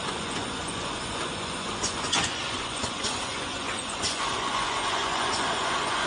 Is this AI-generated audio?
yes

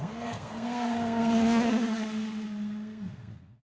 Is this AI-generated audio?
yes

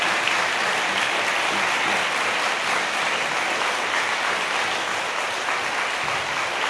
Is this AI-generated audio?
no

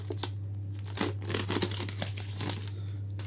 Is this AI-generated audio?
no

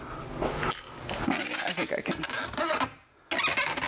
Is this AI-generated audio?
no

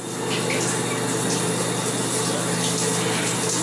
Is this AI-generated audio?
no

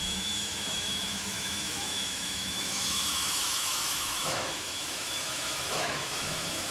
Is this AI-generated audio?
yes